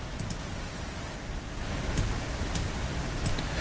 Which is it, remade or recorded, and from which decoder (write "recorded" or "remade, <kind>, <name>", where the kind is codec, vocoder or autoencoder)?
recorded